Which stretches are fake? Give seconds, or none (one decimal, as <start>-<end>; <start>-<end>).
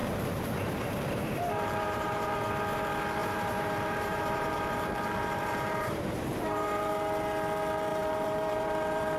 0.0-2.4; 3.2-6.9; 7.9-9.2